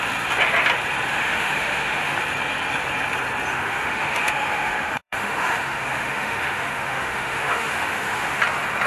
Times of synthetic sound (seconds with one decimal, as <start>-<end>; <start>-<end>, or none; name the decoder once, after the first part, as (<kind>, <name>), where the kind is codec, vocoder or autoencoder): 1.1-2.2 (autoencoder, DAC-VAE); 3.5-8.4

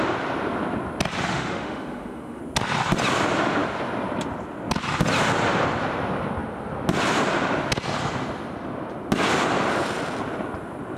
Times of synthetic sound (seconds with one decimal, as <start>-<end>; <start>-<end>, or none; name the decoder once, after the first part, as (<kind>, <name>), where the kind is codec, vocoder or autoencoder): 1.3-2.4 (autoencoder, DAC-VAE)